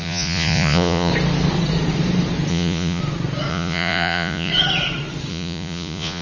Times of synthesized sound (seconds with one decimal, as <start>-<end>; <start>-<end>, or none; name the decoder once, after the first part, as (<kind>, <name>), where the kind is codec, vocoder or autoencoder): 0.0-1.1 (vocoder, Vocos); 2.5-3.0; 3.5-4.5; 5.3-6.2

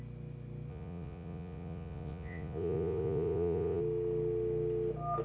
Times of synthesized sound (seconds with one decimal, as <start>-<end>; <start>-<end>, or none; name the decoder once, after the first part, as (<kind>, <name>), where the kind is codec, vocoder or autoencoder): 0.7-3.8 (vocoder, Vocos)

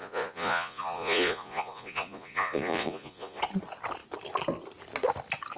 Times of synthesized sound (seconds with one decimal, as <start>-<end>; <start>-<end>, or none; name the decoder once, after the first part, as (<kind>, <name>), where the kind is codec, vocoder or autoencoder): 0.0-3.4 (vocoder, Vocos)

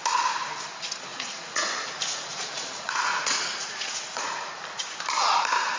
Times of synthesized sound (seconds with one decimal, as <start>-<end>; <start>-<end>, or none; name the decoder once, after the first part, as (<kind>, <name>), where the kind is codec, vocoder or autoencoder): 1.1-4.6 (vocoder, Vocos)

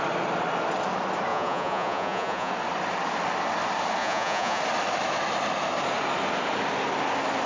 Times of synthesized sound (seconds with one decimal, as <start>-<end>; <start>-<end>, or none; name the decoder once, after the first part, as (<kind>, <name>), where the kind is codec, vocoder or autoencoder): 1.3-2.5 (vocoder, Vocos); 4.0-4.6

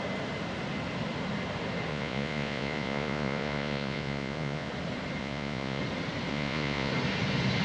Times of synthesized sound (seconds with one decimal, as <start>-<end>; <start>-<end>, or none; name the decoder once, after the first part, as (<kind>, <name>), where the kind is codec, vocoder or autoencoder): 1.9-4.7 (vocoder, Vocos); 5.2-5.8; 6.3-6.9

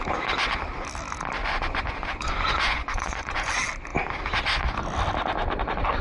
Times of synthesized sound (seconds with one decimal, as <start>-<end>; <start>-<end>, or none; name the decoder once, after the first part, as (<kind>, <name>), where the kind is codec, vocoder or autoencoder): 1.4-3.5 (vocoder, Vocos)